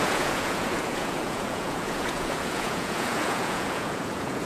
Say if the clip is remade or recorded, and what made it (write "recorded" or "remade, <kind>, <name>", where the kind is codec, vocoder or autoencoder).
remade, vocoder, Vocos